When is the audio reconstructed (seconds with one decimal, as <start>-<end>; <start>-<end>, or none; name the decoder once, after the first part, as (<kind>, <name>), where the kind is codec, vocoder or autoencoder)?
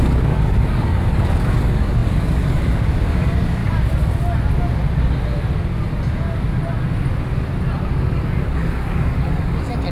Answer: 0.0-3.6 (codec, DAC); 7.9-9.9